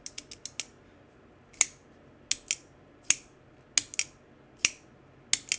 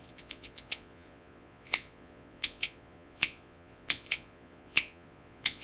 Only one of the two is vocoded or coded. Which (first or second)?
second